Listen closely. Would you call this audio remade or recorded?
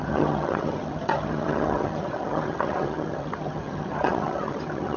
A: remade